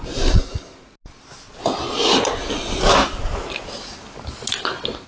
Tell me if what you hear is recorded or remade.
recorded